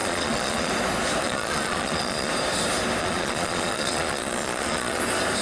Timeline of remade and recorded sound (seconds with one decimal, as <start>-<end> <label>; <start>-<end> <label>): 0.0-0.7 remade; 0.7-1.2 recorded; 1.2-2.3 remade; 2.3-3.0 recorded; 3.0-5.0 remade; 5.0-5.4 recorded